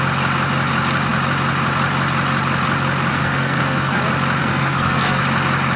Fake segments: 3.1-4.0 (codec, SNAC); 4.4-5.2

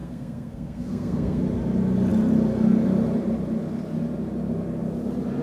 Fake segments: 0.0-1.4 (codec, SNAC)